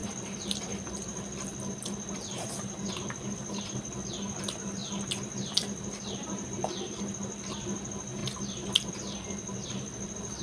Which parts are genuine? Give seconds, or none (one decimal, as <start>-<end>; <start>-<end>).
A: 4.1-4.8; 6.9-10.4